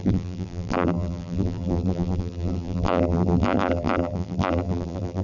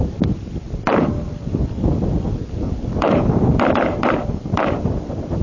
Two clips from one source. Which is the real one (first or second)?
second